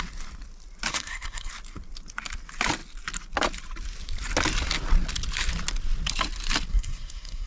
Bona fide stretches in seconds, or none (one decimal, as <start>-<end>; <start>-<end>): 0.0-0.9; 1.5-6.7